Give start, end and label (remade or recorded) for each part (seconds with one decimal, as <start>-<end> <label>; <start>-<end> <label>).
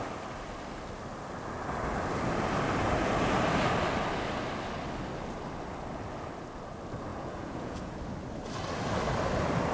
0.0-7.1 recorded; 7.1-8.0 remade; 8.0-9.7 recorded